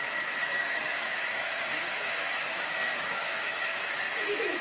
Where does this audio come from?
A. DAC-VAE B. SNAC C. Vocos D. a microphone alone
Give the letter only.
A